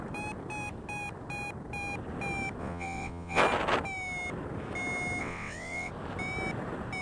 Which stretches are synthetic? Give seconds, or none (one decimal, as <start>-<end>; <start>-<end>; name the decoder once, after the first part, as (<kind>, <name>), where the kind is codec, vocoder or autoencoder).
2.6-3.4 (vocoder, WaveNeXt); 5.2-5.9